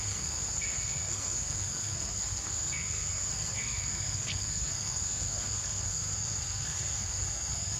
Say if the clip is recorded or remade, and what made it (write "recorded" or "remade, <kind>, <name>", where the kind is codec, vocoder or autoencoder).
remade, codec, SNAC